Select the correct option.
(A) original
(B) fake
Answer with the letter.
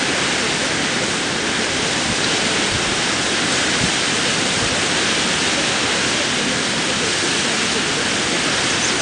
B